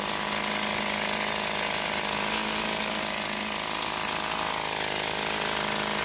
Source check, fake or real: real